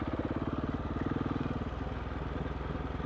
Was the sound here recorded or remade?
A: recorded